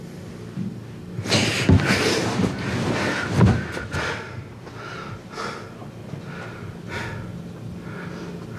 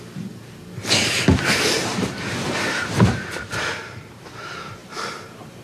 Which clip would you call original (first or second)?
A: first